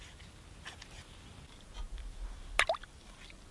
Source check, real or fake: real